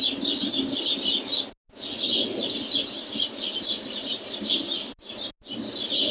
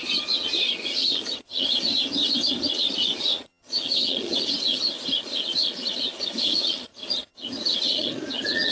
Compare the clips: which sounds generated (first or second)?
second